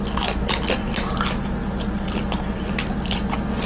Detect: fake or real real